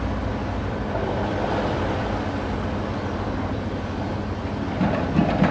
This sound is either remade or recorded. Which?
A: recorded